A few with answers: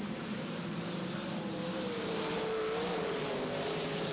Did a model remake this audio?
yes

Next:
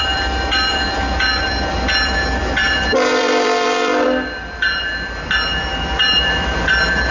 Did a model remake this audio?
yes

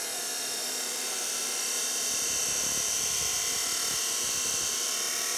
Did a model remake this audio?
yes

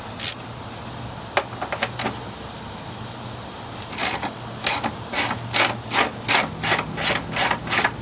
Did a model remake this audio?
no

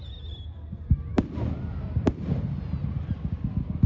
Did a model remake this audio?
no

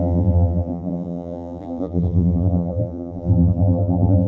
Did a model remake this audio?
yes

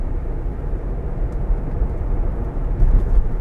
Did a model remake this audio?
yes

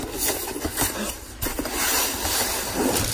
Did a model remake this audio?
no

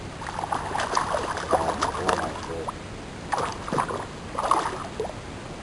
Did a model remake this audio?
no